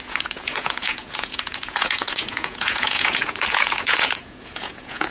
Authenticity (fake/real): fake